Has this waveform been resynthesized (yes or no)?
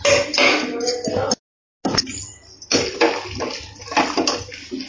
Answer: no